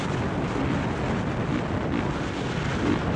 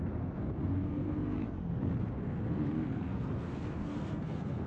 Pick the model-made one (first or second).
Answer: second